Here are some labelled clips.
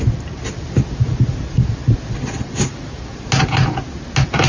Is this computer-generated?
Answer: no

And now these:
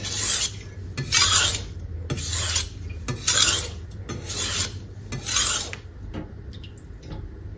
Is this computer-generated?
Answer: no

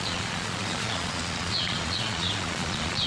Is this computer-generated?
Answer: yes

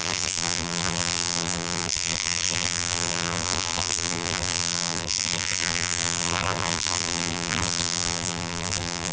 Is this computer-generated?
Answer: yes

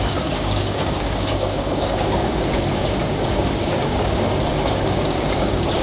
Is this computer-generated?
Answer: yes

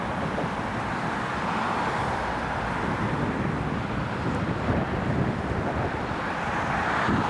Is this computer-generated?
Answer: yes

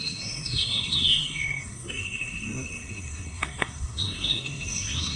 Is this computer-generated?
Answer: yes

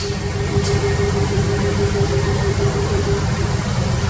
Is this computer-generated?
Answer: yes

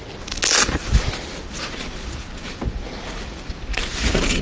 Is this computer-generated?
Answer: no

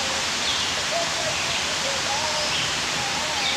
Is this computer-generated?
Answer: yes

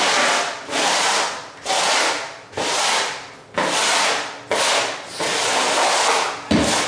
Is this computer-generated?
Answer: no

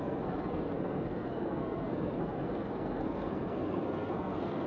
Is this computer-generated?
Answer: yes